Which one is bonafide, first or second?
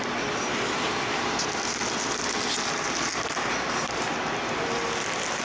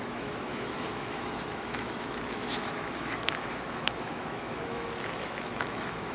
first